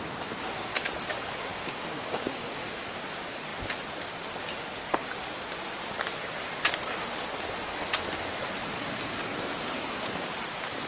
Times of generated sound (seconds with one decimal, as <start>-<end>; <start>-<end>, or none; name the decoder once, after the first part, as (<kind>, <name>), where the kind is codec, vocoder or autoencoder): 1.5-2.3 (codec, DAC)